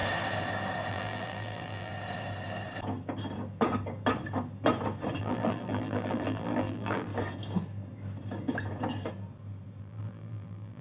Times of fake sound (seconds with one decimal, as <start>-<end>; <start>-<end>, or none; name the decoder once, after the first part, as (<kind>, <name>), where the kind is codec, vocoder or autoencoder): 0.9-1.9 (vocoder, BigVGAN v2); 5.2-7.1; 9.8-10.8